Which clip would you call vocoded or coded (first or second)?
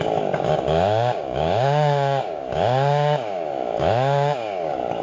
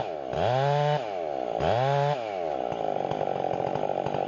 first